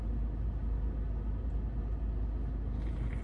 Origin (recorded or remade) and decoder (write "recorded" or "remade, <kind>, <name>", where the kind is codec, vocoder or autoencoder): recorded